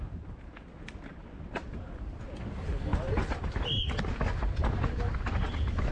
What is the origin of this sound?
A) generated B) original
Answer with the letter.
B